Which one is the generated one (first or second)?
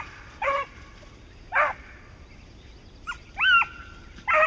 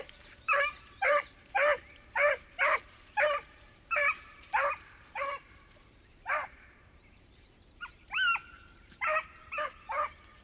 second